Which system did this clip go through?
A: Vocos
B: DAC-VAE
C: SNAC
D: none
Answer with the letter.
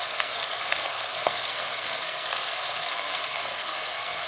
C